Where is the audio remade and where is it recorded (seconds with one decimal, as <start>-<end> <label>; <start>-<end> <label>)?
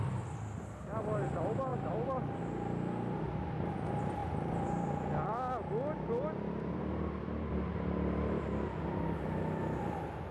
0.0-10.3 recorded